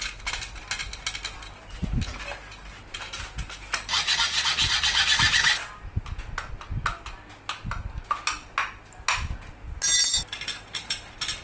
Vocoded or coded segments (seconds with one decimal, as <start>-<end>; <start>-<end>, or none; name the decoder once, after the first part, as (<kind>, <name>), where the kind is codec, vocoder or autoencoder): none